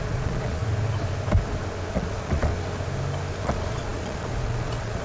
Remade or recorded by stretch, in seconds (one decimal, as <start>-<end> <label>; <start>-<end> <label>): 0.0-0.6 remade; 0.6-1.9 recorded; 1.9-2.5 remade; 2.5-3.4 recorded; 3.4-5.0 remade